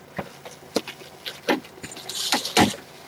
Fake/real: real